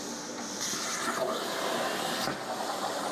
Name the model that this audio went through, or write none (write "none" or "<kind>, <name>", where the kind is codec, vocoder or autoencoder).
none